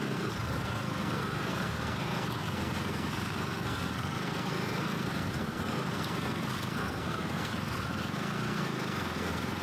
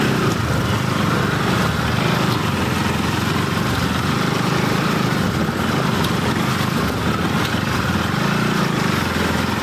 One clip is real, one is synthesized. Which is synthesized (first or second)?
first